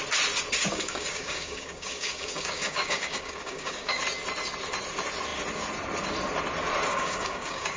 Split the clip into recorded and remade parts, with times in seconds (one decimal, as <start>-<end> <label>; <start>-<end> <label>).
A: 0.0-0.7 recorded; 0.7-4.0 remade; 4.0-6.9 recorded; 6.9-7.8 remade